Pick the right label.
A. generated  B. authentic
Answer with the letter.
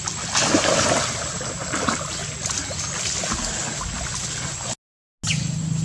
B